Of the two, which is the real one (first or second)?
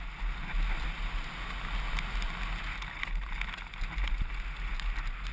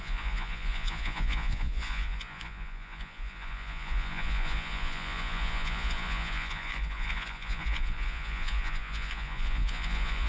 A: first